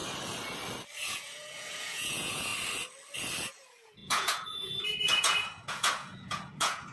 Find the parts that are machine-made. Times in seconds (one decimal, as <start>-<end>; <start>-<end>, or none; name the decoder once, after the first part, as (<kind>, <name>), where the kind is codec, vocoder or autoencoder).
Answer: 1.1-2.5 (vocoder, Vocos); 3.5-6.9